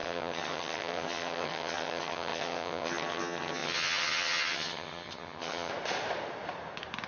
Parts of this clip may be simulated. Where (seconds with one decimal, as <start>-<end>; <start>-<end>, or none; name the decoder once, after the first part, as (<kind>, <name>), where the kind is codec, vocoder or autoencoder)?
0.0-5.7 (vocoder, HiFi-GAN)